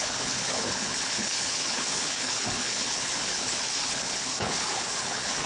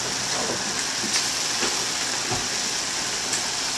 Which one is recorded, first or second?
second